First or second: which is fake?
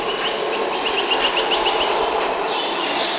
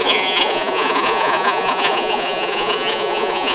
second